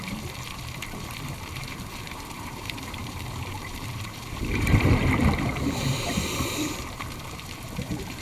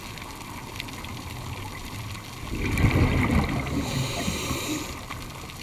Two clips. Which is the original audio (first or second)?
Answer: second